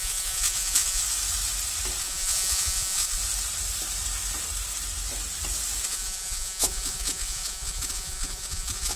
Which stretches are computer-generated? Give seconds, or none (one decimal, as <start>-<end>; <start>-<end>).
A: 0.0-1.0; 2.0-3.2; 5.8-9.0